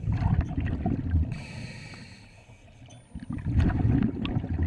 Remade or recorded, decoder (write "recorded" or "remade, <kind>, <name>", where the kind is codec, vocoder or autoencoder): recorded